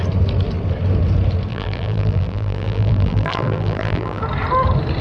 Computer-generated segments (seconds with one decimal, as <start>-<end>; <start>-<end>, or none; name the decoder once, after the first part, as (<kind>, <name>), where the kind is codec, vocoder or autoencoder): 1.5-4.2 (vocoder, BigVGAN v2)